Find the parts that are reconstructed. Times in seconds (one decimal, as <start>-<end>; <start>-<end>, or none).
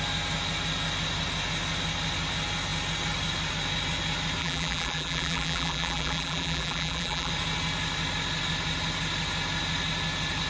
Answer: 4.4-7.3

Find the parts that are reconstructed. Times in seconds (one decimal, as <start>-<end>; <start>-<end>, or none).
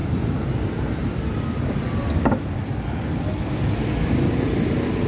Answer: none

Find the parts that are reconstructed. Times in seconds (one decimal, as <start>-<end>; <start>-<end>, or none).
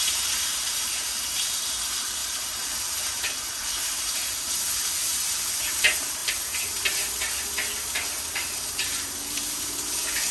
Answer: 0.0-6.2; 8.4-10.3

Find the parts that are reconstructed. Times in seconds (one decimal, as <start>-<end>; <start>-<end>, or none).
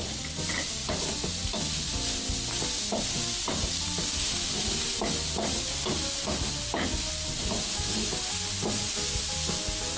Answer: none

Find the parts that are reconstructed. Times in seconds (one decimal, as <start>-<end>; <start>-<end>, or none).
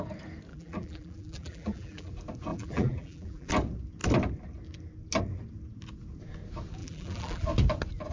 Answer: 0.5-2.1; 2.5-3.5; 6.8-7.5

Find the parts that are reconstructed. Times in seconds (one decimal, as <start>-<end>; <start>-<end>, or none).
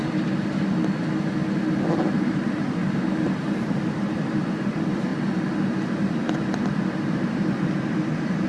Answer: 2.2-5.1; 7.8-8.5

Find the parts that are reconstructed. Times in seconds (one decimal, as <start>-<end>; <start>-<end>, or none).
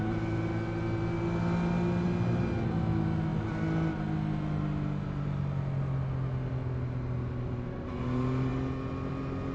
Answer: none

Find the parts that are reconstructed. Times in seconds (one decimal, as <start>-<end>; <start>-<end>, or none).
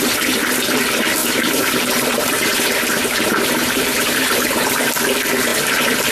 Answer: 1.2-4.9